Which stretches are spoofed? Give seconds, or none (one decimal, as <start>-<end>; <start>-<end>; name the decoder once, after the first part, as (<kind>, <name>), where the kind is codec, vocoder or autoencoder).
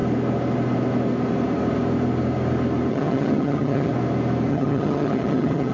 2.9-3.9 (vocoder, HiFi-GAN); 4.5-5.7